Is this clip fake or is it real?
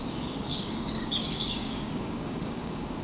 fake